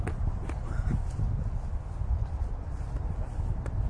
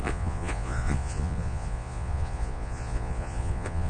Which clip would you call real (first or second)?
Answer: first